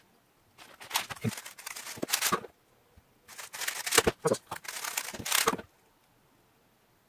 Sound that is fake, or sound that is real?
real